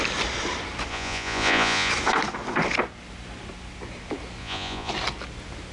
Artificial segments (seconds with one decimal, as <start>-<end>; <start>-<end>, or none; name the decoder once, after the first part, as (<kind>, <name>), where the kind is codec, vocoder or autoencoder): 0.9-1.9 (vocoder, Vocos); 4.4-4.9